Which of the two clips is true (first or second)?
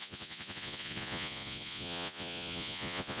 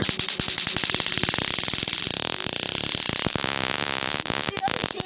second